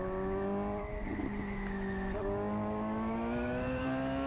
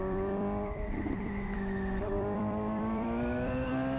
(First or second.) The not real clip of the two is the second